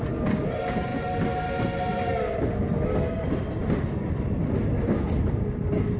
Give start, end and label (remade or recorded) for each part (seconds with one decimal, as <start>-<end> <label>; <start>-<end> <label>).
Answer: 0.0-6.0 recorded